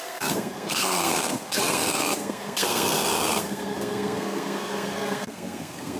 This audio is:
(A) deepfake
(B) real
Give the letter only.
A